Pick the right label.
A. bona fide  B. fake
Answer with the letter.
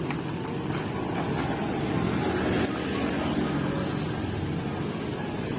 A